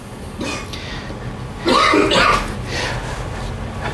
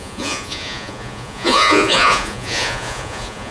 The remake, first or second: second